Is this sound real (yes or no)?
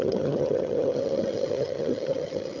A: no